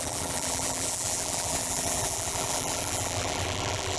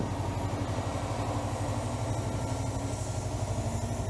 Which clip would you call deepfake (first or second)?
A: first